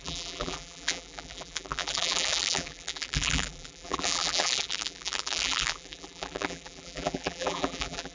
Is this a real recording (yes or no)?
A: no